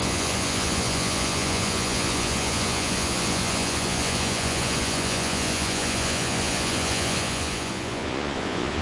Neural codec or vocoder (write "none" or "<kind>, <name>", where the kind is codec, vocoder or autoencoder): vocoder, Vocos